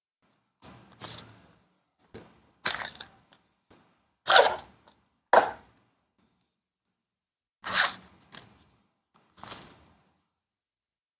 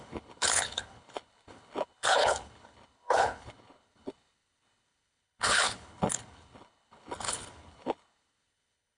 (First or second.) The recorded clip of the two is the first